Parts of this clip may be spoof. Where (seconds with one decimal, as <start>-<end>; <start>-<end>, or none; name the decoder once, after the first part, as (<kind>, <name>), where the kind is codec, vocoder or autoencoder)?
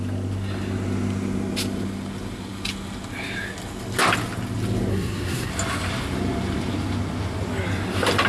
4.9-5.5 (codec, SNAC)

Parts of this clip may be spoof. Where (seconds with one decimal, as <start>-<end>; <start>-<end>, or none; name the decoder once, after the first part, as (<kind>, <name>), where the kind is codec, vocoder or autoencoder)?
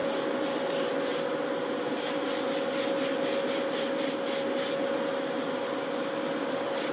none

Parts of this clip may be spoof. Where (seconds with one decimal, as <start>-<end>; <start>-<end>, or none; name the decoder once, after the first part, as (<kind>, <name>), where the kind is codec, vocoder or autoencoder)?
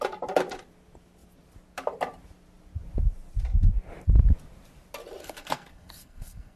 5.2-6.6 (codec, SNAC)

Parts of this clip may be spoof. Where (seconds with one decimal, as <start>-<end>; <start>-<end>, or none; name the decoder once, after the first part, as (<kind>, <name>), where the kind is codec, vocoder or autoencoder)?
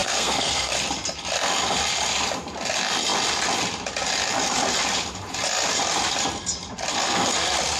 0.0-0.7 (codec, SNAC)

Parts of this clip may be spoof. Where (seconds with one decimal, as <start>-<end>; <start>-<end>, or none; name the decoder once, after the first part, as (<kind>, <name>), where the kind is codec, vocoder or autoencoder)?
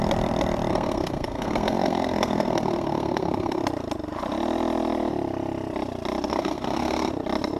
0.7-3.6 (codec, SNAC); 6.3-7.1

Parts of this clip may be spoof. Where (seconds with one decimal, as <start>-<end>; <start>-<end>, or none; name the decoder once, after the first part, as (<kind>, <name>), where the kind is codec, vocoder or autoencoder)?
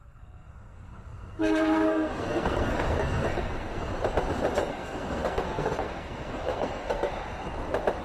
0.0-3.9 (codec, SNAC); 4.7-7.1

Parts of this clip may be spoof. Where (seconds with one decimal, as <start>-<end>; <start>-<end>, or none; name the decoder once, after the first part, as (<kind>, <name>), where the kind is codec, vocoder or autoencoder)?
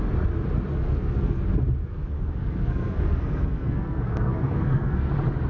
0.7-1.4 (codec, SNAC); 1.8-5.1